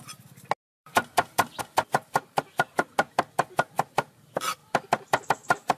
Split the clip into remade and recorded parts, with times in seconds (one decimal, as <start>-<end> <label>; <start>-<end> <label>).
0.0-0.8 recorded; 0.8-1.6 remade; 1.6-5.8 recorded